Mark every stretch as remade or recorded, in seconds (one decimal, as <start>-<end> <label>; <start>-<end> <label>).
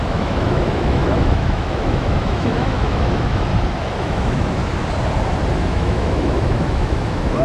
0.0-3.5 remade; 3.5-4.0 recorded; 4.0-4.6 remade; 4.6-5.7 recorded; 5.7-7.4 remade